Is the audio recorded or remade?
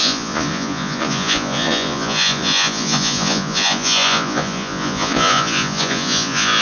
remade